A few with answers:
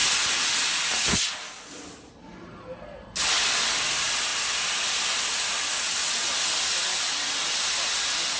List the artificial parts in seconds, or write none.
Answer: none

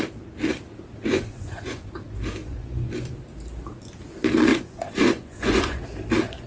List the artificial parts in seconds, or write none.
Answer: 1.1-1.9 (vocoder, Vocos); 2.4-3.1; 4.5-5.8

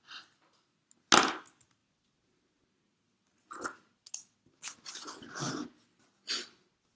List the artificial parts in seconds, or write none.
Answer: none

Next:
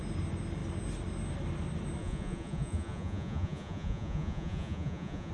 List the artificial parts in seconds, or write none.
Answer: 2.0-5.3 (vocoder, Vocos)

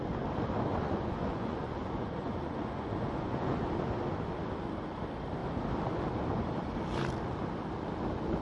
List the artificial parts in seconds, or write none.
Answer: 0.7-3.6 (vocoder, Vocos)

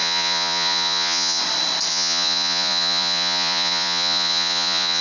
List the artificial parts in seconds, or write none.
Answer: 0.0-1.4 (vocoder, Vocos); 1.9-5.0

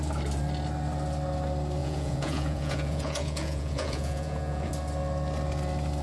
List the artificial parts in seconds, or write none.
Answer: 1.8-4.7 (vocoder, Vocos)